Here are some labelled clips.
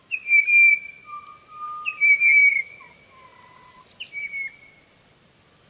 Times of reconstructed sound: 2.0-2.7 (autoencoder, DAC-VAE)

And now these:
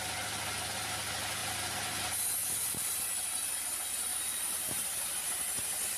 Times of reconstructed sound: 2.4-3.0 (vocoder, BigVGAN v2); 4.1-5.1

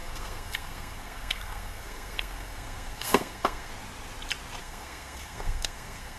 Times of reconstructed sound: 0.0-3.7 (codec, SNAC); 4.6-6.2

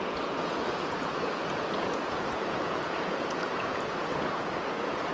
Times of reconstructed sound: 0.0-5.1 (vocoder, Vocos)

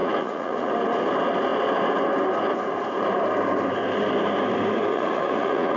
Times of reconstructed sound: 0.0-0.7 (vocoder, Vocos); 4.9-5.8

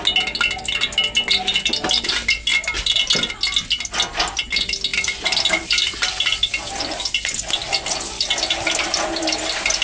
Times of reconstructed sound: none